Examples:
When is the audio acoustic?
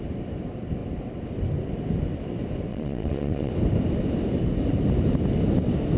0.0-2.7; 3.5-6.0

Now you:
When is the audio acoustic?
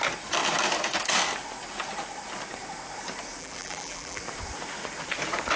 0.0-3.4; 4.2-5.6